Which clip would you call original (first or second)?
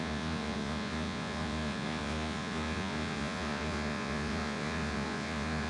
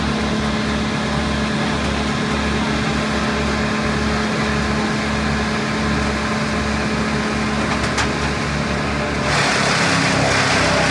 second